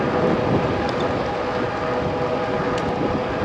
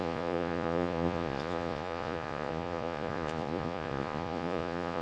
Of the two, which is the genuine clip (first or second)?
first